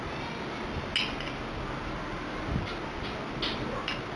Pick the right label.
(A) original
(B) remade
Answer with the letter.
A